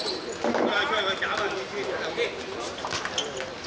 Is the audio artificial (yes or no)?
no